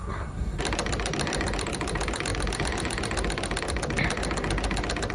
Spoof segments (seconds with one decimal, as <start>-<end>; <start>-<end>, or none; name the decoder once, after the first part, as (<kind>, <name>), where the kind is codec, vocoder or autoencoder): 0.0-0.6 (codec, SNAC)